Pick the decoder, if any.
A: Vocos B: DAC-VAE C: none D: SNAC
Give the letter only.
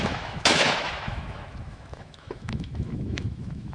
B